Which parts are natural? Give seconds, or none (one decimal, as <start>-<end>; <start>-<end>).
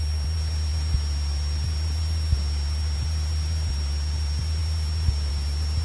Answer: 0.0-5.8